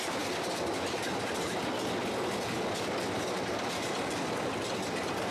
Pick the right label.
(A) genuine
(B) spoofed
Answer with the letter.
A